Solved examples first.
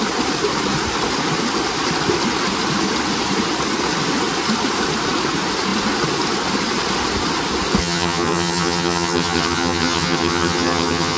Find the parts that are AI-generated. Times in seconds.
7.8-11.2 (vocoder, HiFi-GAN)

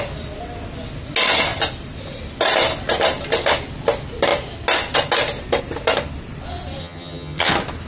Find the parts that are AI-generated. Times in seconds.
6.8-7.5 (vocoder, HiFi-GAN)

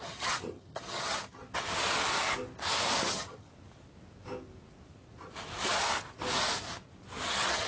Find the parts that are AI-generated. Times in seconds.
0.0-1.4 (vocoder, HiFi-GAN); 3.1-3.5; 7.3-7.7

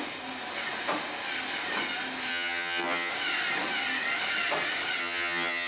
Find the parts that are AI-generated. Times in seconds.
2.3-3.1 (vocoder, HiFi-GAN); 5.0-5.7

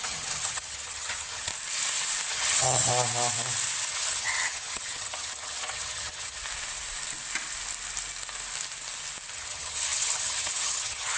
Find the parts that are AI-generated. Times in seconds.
0.0-1.5 (vocoder, HiFi-GAN); 2.3-2.9; 3.9-6.4; 9.3-11.2